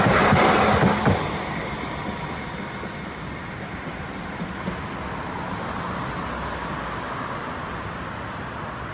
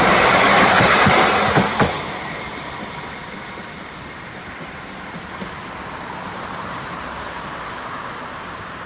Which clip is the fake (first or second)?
second